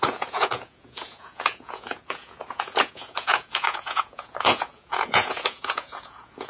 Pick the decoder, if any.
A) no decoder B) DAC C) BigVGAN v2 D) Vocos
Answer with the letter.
D